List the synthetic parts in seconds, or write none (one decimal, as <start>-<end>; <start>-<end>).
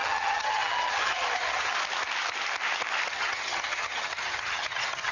0.0-1.7; 3.1-5.1